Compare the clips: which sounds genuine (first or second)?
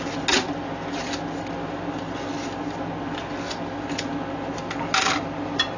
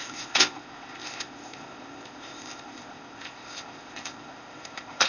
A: first